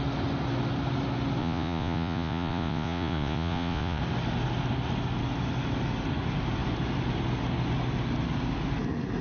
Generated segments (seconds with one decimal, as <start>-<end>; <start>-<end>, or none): 1.4-4.0